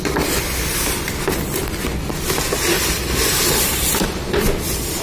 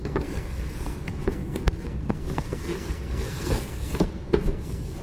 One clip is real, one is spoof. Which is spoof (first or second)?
second